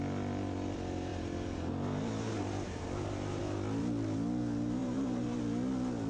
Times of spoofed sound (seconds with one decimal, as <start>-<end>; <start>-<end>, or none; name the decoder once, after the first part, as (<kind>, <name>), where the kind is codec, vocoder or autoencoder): 1.1-3.4 (vocoder, BigVGAN v2); 4.8-5.4